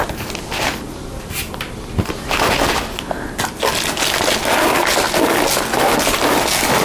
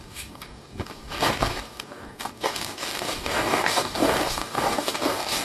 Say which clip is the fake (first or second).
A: second